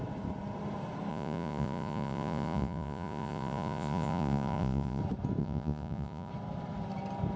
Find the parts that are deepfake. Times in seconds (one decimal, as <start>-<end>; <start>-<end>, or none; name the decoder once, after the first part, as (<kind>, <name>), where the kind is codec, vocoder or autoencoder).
1.1-5.0 (vocoder, Vocos); 5.4-6.3